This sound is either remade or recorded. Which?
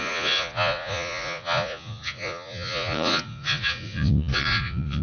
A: remade